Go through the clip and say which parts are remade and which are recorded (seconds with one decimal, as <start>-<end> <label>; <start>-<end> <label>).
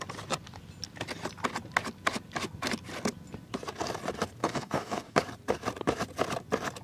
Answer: 0.0-4.4 recorded; 4.4-5.2 remade; 5.2-6.8 recorded